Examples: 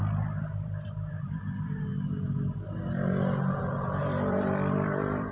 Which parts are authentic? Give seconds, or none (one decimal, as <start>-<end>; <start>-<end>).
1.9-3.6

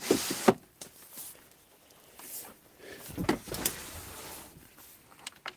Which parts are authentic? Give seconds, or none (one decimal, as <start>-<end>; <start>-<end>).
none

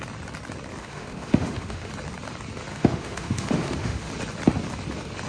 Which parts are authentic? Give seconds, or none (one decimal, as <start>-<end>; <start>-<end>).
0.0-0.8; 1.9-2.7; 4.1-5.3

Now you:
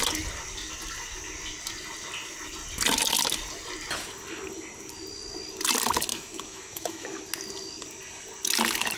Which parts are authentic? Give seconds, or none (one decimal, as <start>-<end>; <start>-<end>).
0.0-6.1; 7.2-9.0